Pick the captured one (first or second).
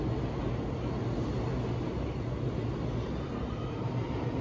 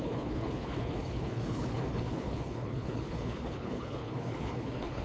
first